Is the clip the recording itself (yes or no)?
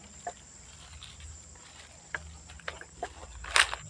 yes